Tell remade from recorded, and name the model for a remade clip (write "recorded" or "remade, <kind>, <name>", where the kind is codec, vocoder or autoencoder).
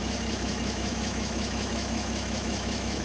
remade, autoencoder, DAC-VAE